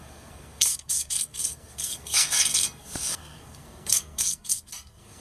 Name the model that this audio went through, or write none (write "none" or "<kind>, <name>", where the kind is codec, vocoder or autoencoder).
codec, SNAC